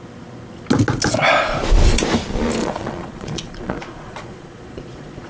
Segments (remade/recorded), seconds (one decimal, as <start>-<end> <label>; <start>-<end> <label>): 0.0-2.6 recorded; 2.6-5.3 remade